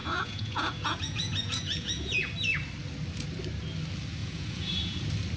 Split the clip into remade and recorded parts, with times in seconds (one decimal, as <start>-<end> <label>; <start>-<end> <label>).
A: 0.0-2.3 remade; 2.3-4.2 recorded; 4.2-5.0 remade; 5.0-5.4 recorded